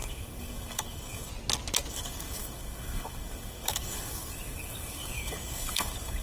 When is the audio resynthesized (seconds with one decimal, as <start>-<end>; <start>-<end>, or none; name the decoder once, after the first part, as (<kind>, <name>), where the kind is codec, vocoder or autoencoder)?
0.0-1.3 (codec, DAC); 1.9-6.2